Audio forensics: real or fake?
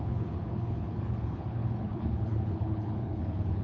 fake